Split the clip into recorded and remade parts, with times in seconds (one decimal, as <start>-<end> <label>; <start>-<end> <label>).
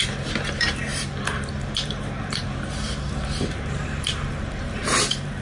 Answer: 0.0-5.4 remade